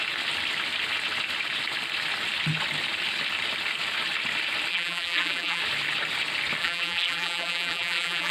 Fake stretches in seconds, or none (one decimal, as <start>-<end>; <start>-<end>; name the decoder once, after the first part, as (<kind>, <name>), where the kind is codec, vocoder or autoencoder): 4.7-5.6 (vocoder, BigVGAN v2); 6.6-8.3